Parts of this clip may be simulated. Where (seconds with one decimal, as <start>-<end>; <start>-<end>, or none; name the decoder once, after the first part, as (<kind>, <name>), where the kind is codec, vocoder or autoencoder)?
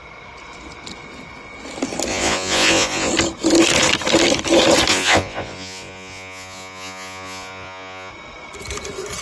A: 2.1-3.1 (vocoder, Vocos); 4.9-8.1